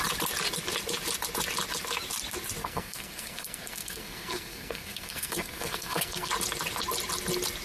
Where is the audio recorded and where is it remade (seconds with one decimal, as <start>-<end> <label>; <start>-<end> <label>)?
0.0-2.6 recorded; 2.6-6.3 remade; 6.3-7.6 recorded